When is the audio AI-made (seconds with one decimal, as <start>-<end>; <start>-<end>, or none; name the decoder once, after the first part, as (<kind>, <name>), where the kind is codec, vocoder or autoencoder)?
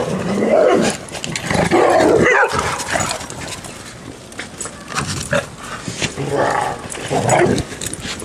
0.0-0.7 (vocoder, BigVGAN v2)